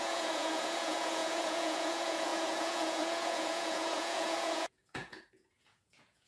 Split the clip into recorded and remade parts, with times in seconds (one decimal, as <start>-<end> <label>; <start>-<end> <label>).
0.0-6.3 remade